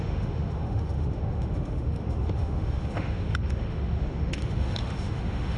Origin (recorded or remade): remade